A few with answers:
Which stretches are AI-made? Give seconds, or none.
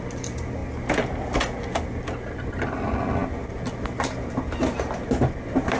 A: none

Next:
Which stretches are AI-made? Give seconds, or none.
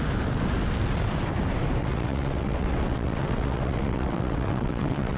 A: 1.8-5.2 (vocoder, WaveNeXt)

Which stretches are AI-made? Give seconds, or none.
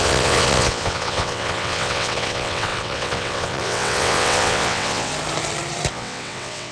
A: 0.0-5.1 (vocoder, WaveNeXt); 5.9-6.7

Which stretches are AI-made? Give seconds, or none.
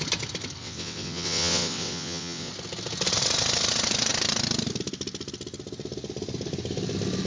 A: 0.6-2.5 (vocoder, WaveNeXt)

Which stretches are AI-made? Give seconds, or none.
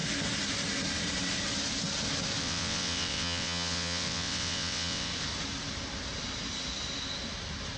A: 2.4-5.1 (vocoder, WaveNeXt)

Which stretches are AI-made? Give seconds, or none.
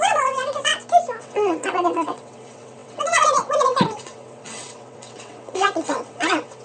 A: 0.0-0.7 (vocoder, WaveNeXt); 1.2-6.6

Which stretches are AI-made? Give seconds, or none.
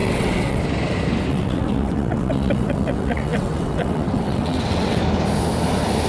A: 0.0-0.6 (vocoder, WaveNeXt); 1.3-5.0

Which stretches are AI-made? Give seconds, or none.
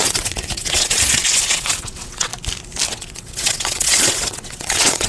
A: 0.0-2.3 (vocoder, WaveNeXt); 2.9-5.1